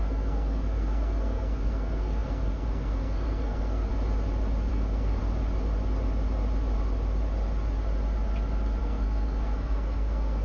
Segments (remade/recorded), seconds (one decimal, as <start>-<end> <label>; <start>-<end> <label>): 0.0-3.9 remade; 3.9-4.7 recorded; 4.7-5.2 remade; 5.2-8.8 recorded; 8.8-10.4 remade